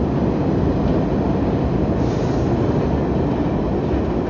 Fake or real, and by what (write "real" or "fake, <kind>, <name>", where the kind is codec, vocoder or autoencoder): real